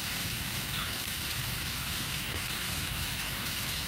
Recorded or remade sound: remade